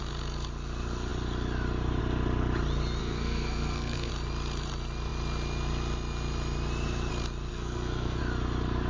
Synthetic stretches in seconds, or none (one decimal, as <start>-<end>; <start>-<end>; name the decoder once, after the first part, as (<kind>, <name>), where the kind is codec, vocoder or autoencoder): 3.0-4.1 (codec, SNAC); 7.5-8.2